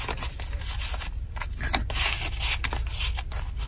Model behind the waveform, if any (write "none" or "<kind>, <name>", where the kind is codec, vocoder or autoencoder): none